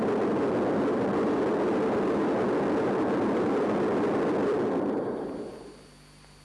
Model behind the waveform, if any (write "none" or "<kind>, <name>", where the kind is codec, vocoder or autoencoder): none